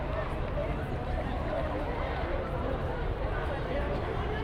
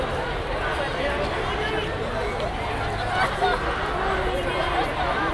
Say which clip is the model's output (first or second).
first